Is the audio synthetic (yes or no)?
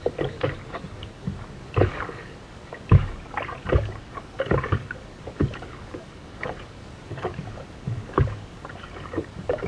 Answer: yes